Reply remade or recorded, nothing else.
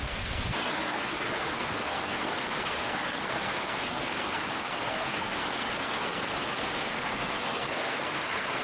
remade